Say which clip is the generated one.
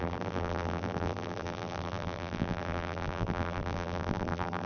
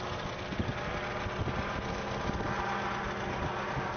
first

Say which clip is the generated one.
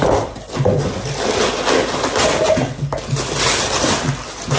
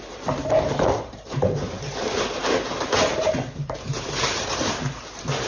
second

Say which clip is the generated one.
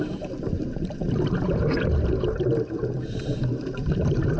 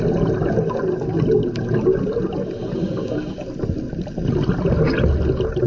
first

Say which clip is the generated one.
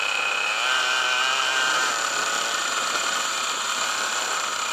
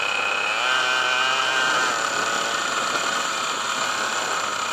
first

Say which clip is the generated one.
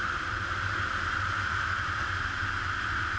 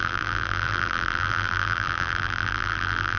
second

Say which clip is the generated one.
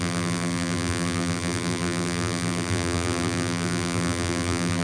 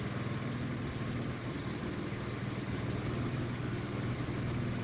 first